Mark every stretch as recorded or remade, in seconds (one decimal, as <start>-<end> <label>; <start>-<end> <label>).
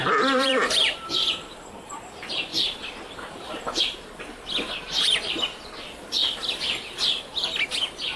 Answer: 0.0-8.2 remade